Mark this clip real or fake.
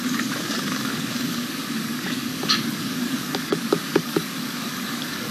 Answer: fake